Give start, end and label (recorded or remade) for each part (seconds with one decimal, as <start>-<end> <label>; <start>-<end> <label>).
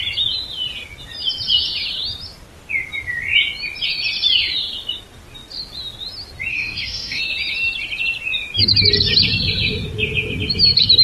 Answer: 0.0-6.5 recorded; 6.5-7.2 remade; 7.2-11.0 recorded